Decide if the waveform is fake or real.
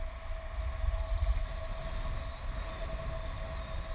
real